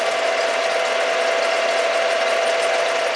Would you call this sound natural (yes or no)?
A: yes